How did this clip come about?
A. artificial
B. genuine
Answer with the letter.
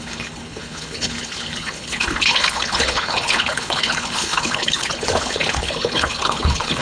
A